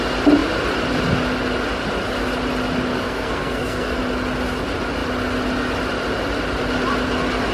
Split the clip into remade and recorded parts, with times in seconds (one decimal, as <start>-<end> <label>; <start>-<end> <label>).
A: 0.0-2.9 recorded; 2.9-4.0 remade; 4.0-7.5 recorded